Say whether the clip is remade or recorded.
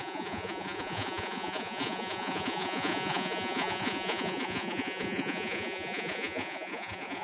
remade